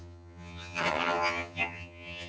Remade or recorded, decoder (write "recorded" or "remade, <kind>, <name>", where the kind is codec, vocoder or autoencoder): remade, vocoder, HiFi-GAN